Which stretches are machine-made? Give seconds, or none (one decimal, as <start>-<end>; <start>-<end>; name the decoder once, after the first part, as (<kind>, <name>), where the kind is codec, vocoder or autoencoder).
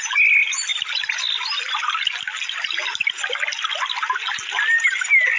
none